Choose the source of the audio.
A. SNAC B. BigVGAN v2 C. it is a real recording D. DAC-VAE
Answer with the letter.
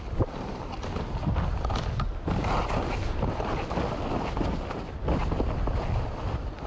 C